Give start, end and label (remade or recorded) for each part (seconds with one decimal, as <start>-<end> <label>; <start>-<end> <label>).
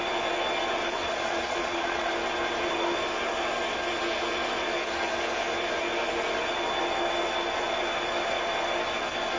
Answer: 0.0-1.0 recorded; 1.0-2.1 remade; 2.1-9.4 recorded